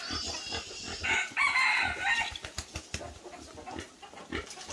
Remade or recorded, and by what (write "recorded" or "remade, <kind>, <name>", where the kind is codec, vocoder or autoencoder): recorded